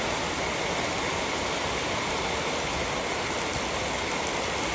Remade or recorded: recorded